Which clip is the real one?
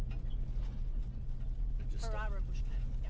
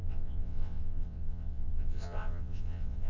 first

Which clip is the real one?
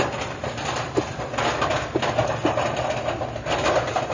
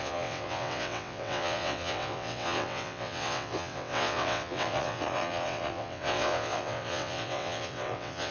first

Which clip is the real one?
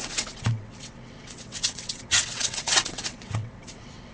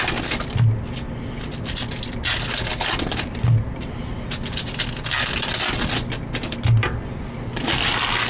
second